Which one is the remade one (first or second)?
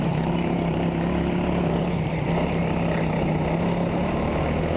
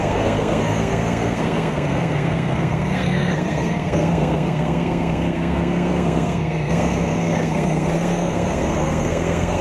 second